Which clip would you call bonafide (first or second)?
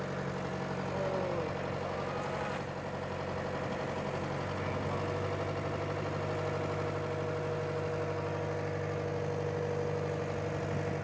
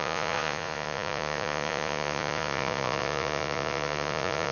first